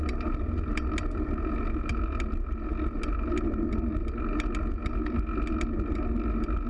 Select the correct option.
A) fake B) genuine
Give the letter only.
B